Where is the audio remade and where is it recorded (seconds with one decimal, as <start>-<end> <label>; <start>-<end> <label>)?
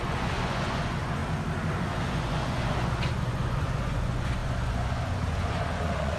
0.0-1.2 remade; 1.2-1.8 recorded; 1.8-6.2 remade